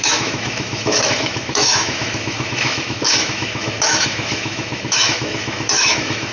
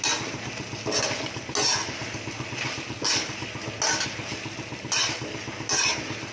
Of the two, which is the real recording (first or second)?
second